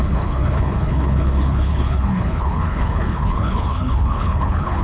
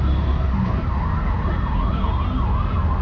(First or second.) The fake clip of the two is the first